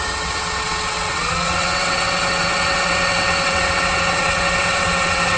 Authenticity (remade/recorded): remade